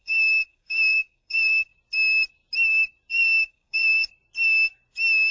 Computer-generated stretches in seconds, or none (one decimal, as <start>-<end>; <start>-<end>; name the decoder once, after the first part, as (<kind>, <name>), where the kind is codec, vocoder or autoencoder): 0.0-1.7 (codec, DAC); 3.1-4.1